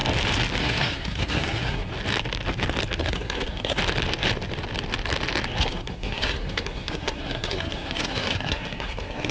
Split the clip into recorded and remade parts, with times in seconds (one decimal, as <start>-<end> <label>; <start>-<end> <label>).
0.0-0.6 recorded; 0.6-1.9 remade; 1.9-3.0 recorded; 3.0-3.8 remade; 3.8-5.6 recorded; 5.6-9.3 remade